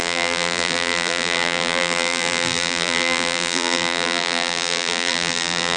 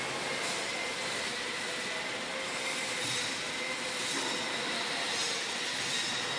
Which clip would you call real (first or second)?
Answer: second